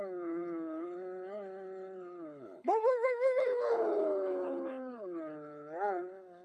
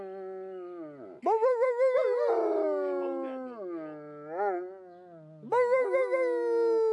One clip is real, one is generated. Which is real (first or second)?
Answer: second